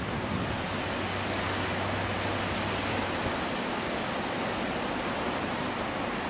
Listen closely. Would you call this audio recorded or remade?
recorded